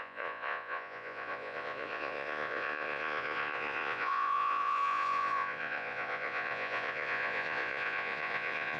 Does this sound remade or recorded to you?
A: remade